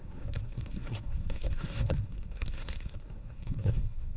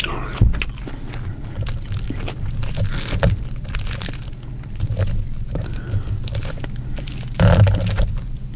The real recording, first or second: second